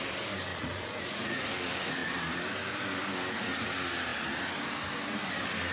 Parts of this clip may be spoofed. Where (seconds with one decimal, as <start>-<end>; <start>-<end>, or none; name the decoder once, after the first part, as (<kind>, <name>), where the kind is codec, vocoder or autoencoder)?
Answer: 0.5-1.5 (vocoder, Vocos)